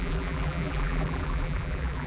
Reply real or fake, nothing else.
fake